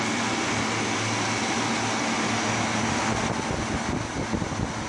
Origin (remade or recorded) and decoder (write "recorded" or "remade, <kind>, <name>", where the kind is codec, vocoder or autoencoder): recorded